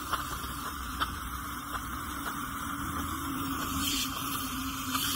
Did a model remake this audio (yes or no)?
yes